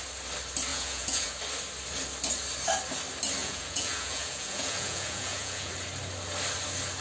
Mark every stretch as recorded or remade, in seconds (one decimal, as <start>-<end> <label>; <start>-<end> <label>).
0.0-0.7 recorded; 0.7-1.4 remade; 1.4-3.4 recorded; 3.4-5.7 remade; 5.7-7.0 recorded